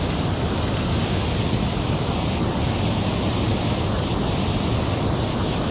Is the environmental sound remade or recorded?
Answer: recorded